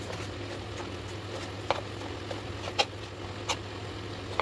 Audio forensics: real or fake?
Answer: real